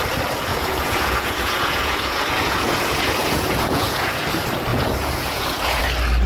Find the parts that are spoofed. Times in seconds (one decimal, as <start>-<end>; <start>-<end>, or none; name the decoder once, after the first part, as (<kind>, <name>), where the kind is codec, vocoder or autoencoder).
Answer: 0.5-4.3 (vocoder, Vocos); 4.7-5.8

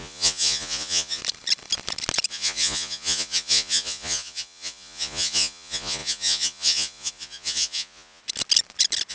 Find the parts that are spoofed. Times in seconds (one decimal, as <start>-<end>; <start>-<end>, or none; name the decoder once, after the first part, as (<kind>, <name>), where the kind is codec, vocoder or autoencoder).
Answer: 0.0-1.2 (vocoder, Vocos); 2.3-8.2